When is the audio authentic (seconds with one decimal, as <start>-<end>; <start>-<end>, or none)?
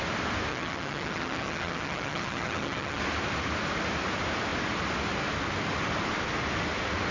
0.0-0.5; 3.0-7.1